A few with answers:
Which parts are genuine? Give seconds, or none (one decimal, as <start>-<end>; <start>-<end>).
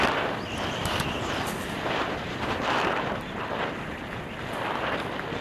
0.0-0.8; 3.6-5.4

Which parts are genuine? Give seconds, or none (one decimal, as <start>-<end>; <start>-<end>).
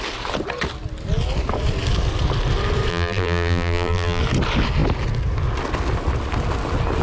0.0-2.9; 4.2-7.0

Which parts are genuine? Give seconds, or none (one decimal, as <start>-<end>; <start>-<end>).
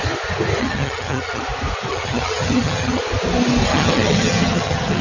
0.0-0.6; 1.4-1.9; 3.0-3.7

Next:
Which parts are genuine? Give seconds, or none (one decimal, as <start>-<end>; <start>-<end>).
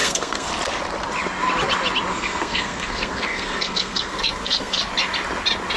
0.5-2.1; 4.8-5.8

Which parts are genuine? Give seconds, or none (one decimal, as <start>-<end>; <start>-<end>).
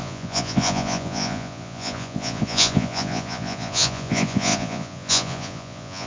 none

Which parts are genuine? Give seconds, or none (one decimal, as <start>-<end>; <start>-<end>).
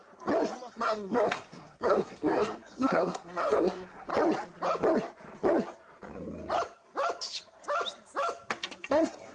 0.0-0.7; 4.1-8.9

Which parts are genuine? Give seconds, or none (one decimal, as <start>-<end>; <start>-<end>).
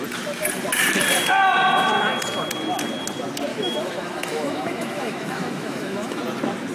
0.0-3.5; 6.2-6.7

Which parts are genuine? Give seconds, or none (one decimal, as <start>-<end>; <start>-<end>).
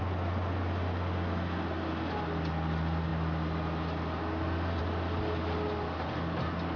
0.0-6.8